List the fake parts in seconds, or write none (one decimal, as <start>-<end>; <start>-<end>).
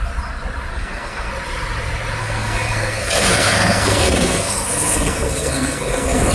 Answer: 0.7-1.3; 2.2-6.3